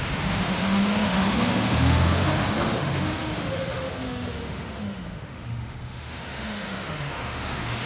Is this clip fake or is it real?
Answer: fake